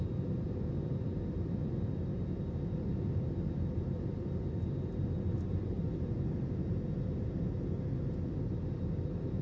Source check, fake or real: real